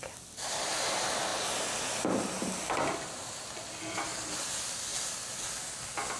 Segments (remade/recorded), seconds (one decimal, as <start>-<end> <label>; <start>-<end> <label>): 0.0-4.9 recorded; 4.9-5.5 remade; 5.5-6.2 recorded